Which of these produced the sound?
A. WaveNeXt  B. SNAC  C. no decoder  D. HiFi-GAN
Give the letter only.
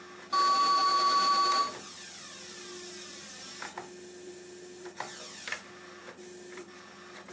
C